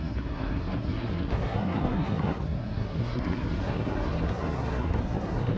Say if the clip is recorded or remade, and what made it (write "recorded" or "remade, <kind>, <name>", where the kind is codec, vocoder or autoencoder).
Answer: remade, codec, SNAC